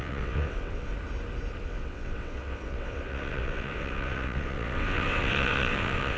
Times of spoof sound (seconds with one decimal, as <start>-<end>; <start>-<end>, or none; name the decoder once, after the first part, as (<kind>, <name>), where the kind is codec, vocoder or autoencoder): 0.0-0.9 (vocoder, WaveNeXt); 1.6-6.2